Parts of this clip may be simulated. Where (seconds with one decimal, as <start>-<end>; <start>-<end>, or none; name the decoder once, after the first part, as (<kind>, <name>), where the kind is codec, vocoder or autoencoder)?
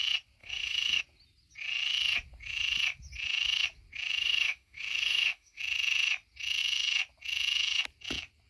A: 0.4-1.0 (autoencoder, DAC-VAE); 4.2-5.6